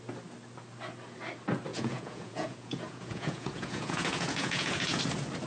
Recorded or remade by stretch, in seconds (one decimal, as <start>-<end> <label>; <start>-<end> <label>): 0.0-1.7 recorded; 1.7-5.0 remade; 5.0-5.5 recorded

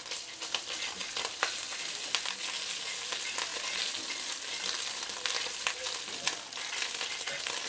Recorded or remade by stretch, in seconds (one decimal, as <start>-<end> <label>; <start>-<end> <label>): 0.0-7.7 recorded

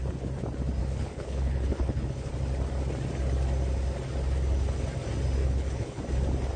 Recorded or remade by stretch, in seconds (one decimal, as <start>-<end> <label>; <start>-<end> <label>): 0.0-0.8 recorded; 0.8-2.3 remade; 2.3-5.4 recorded; 5.4-6.0 remade; 6.0-6.6 recorded

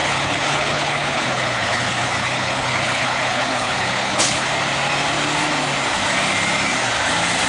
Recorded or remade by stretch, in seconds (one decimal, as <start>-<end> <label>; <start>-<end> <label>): 0.0-4.5 remade; 4.5-7.5 recorded

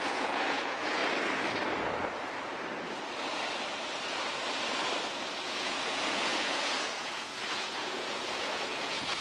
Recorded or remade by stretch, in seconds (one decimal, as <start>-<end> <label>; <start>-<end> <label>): 0.0-1.0 remade; 1.0-5.4 recorded; 5.4-9.2 remade